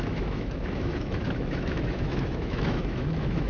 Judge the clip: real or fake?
fake